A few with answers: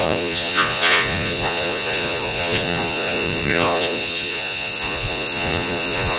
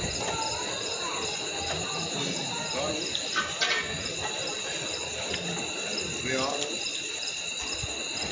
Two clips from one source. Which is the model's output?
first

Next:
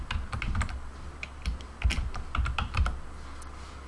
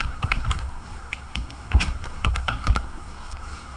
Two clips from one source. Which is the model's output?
second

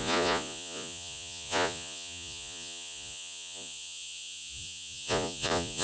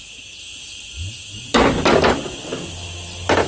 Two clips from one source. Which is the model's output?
first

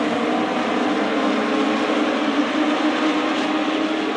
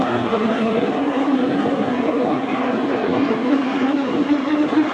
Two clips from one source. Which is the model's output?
second